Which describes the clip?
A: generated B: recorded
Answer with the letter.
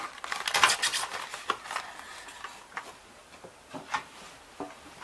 B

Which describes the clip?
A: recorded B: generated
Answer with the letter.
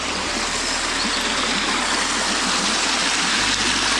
A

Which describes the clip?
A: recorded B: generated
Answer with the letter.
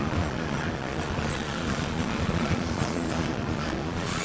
B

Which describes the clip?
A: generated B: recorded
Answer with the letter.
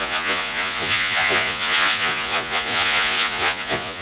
A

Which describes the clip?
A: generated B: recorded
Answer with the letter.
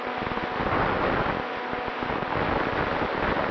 B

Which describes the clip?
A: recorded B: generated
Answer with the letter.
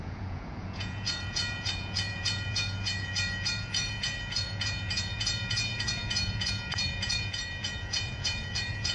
B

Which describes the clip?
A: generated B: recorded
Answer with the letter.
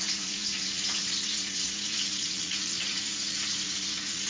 A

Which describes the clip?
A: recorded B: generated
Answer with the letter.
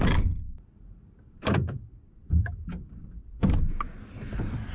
A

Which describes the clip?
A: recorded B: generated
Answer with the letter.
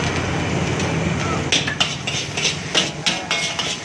A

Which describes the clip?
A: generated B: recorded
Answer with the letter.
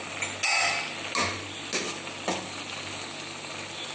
B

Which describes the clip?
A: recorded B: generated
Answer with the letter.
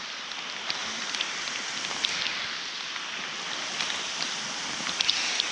A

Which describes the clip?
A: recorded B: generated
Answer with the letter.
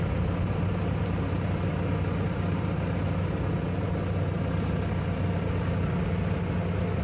A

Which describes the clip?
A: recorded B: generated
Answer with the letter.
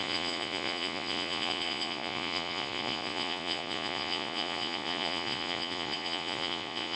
B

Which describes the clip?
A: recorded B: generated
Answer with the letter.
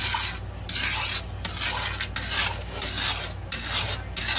A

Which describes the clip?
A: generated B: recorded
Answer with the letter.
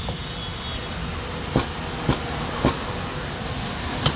B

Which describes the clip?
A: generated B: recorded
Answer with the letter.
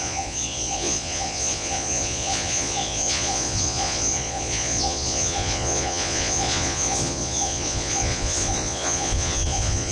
A